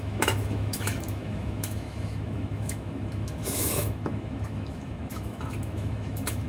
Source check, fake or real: fake